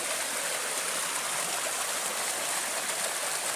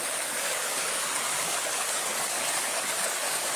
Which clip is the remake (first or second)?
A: second